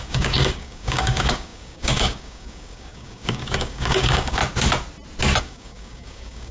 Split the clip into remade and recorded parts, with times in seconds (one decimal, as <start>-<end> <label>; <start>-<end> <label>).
0.0-4.4 remade; 4.4-5.4 recorded; 5.4-6.5 remade